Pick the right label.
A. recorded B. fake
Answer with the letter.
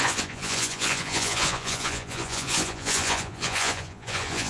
B